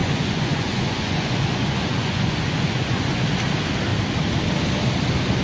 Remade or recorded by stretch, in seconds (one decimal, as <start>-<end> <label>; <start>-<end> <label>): 0.0-3.2 remade; 3.2-5.4 recorded